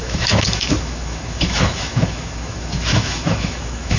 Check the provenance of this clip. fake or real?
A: fake